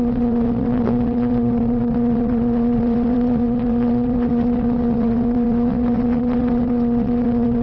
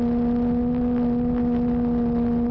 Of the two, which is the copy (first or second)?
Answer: first